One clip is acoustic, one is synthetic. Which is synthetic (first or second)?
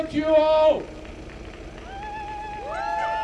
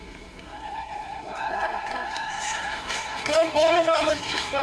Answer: second